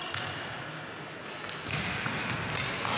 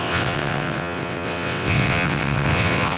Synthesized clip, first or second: second